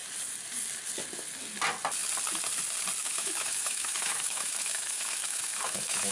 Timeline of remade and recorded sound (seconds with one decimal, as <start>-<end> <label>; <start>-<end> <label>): 0.0-3.0 recorded; 3.0-6.1 remade